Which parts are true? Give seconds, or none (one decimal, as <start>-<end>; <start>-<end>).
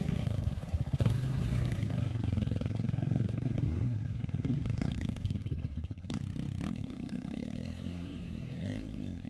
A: 6.2-6.7